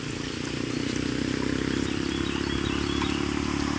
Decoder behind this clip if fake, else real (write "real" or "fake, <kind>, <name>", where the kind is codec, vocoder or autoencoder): real